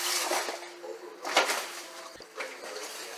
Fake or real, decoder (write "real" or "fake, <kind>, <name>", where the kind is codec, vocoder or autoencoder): real